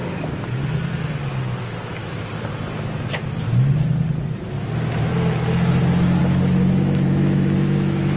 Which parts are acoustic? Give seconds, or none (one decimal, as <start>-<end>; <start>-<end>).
0.0-1.6; 2.0-6.2